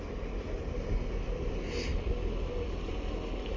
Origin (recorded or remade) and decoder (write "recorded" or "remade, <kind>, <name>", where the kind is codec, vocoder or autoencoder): recorded